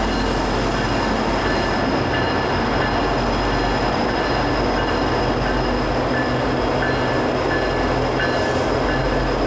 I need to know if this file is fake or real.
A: real